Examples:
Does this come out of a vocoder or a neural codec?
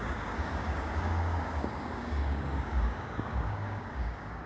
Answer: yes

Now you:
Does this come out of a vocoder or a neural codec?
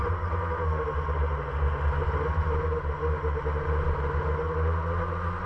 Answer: no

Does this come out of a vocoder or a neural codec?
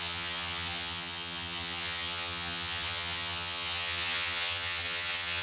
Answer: yes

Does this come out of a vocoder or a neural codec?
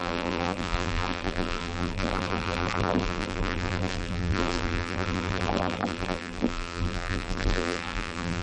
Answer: yes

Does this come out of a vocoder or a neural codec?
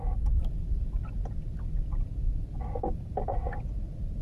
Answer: no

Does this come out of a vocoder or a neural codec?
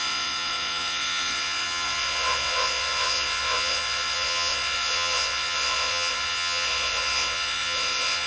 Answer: yes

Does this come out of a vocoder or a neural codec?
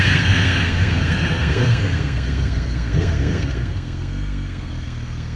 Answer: yes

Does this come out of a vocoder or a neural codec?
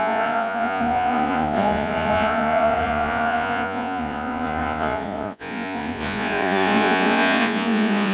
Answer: yes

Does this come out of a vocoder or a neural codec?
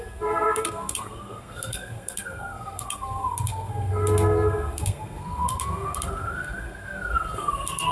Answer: yes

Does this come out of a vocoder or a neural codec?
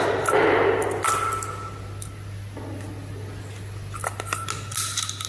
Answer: no